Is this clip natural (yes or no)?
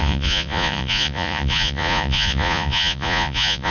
no